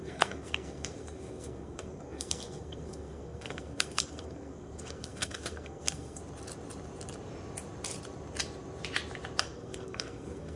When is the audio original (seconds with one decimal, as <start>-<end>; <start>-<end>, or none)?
6.2-9.4